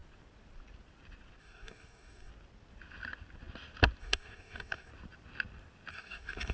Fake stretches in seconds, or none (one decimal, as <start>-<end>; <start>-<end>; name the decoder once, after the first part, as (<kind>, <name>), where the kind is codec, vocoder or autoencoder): 1.4-2.3 (codec, DAC); 4.0-4.9; 5.9-6.5